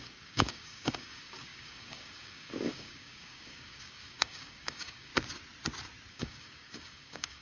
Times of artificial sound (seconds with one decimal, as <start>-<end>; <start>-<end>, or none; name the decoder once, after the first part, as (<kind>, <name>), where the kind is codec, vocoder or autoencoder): 0.0-5.1 (codec, DAC); 6.1-7.4